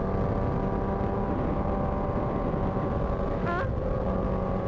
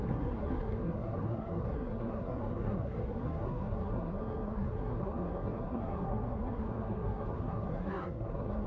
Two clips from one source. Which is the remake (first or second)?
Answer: second